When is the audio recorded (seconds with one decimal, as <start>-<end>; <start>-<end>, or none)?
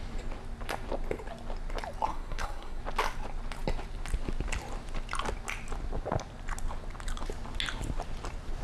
0.0-2.1; 2.8-8.6